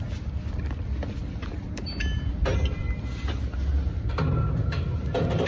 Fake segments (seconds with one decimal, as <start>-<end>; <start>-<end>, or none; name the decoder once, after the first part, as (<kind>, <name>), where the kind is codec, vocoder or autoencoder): none